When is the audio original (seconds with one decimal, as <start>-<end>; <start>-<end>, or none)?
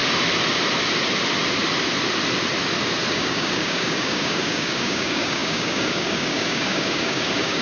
0.0-3.1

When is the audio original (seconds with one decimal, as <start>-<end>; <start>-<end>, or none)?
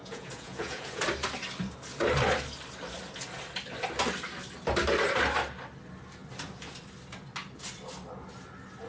1.0-8.9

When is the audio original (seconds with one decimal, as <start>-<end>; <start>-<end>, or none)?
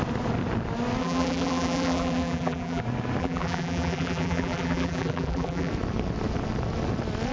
0.0-1.0; 2.8-3.2; 5.7-7.3